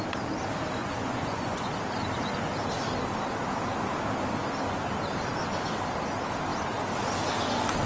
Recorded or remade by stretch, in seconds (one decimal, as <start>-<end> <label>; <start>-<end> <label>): 0.0-0.8 recorded; 0.8-1.7 remade; 1.7-7.9 recorded